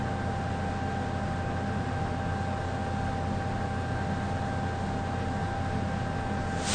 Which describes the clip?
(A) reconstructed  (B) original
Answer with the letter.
B